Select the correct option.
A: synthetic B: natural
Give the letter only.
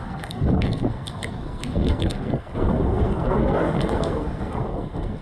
A